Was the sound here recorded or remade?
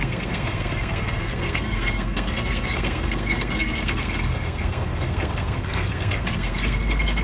remade